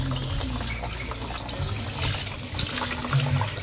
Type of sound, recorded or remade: recorded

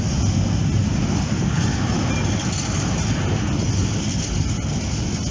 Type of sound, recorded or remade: recorded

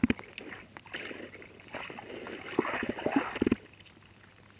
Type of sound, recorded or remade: recorded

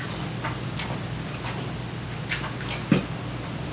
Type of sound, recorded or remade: recorded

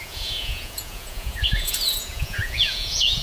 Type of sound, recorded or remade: remade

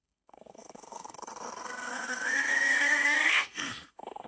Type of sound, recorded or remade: remade